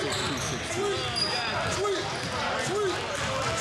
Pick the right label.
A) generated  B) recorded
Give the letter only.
B